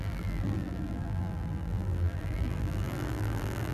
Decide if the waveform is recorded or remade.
remade